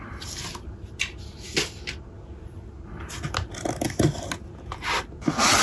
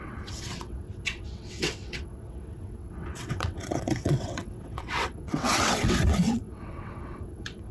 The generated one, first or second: second